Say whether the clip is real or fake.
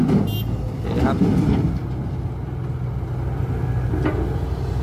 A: real